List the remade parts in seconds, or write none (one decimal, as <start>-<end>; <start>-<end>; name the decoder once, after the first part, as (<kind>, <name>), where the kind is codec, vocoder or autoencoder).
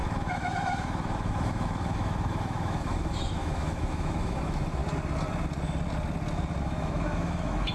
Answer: 0.0-4.8 (autoencoder, DAC-VAE); 6.6-7.7